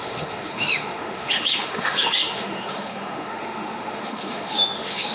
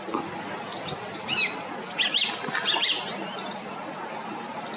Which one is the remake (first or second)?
first